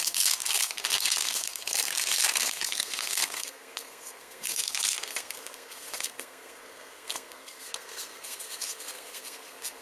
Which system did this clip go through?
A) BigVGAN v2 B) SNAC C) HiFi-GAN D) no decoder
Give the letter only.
B